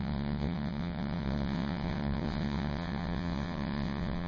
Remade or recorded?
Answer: remade